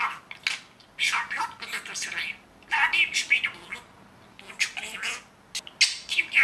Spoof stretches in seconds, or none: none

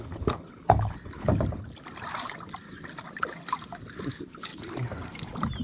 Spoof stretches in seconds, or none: 0.0-1.3 (codec, HILCodec); 4.1-4.5

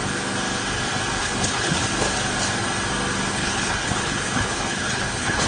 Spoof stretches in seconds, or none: 1.2-1.8 (codec, HILCodec); 3.3-5.5

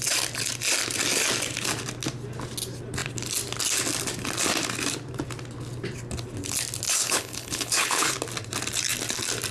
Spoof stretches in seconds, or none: 7.0-8.1 (codec, HILCodec)

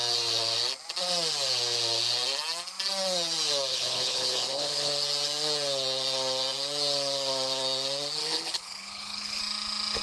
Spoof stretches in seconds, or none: 3.7-4.9 (codec, HILCodec); 8.2-9.4